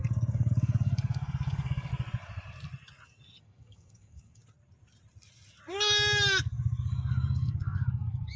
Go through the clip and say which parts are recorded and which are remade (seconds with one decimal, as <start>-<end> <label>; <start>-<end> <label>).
0.0-1.9 remade; 1.9-3.4 recorded; 3.4-4.4 remade; 4.4-6.5 recorded; 6.5-8.4 remade